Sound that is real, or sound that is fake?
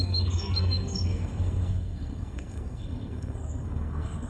fake